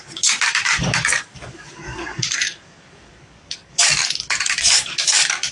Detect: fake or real fake